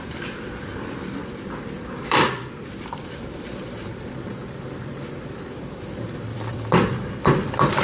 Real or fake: fake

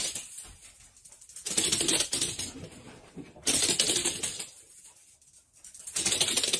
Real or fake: real